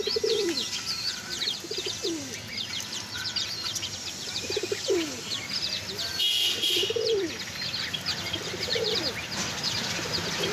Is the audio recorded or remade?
remade